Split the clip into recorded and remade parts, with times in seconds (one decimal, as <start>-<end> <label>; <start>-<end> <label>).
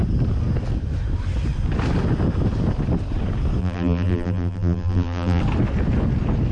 0.0-3.6 recorded; 3.6-5.4 remade; 5.4-6.5 recorded